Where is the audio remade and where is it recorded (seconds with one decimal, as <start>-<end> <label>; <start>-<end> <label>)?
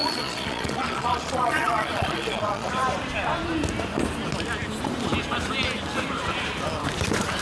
0.0-2.7 remade; 2.7-7.4 recorded